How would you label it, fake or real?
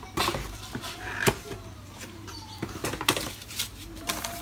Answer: fake